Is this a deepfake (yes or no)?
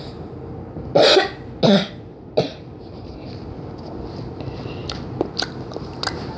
no